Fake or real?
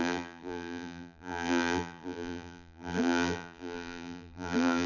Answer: fake